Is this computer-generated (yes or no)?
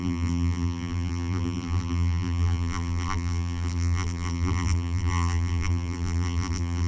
yes